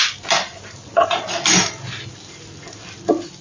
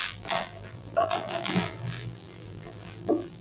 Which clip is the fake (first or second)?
second